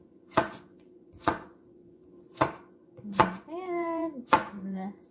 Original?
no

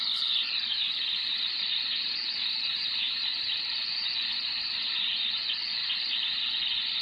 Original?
yes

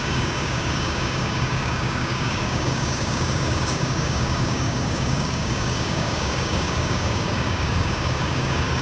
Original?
no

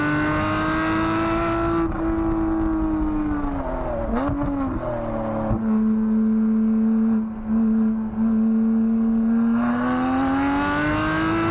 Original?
yes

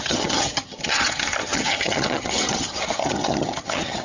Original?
no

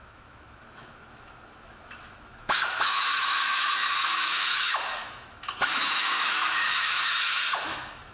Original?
no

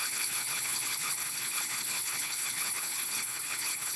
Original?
no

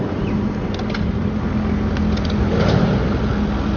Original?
yes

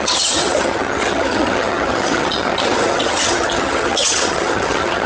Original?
no